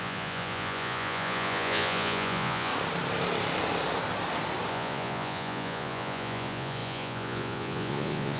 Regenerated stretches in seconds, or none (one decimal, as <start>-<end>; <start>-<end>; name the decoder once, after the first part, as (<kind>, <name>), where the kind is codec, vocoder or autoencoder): 0.0-2.7 (vocoder, Vocos); 4.7-8.4